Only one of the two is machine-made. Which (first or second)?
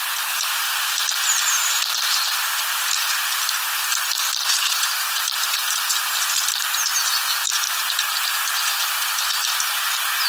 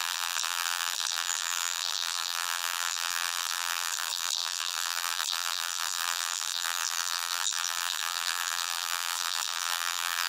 second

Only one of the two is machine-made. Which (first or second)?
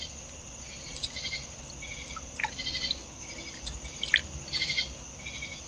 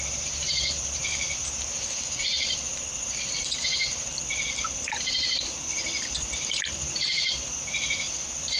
second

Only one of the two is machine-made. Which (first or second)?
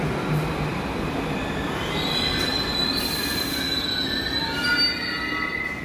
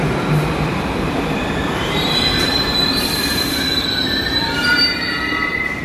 second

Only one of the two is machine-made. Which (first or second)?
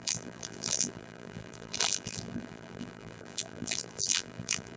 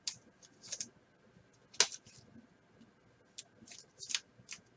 first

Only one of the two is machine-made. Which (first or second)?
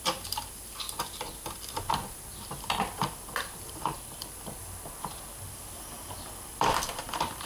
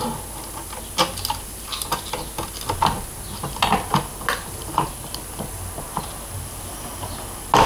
first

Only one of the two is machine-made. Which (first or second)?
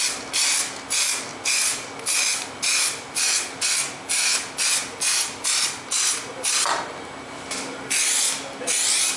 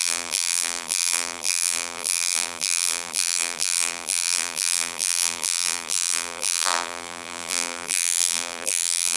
second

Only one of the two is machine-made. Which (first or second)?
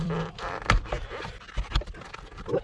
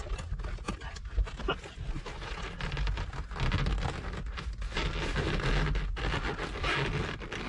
first